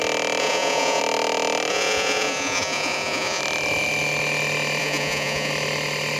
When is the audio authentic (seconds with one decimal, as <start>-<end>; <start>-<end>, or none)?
0.0-0.4; 1.0-1.7; 3.4-4.8; 5.5-6.2